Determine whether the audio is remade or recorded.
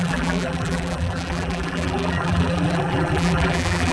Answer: remade